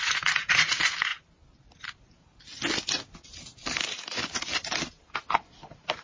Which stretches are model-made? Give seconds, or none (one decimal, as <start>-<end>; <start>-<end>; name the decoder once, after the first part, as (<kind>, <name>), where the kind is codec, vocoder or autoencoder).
none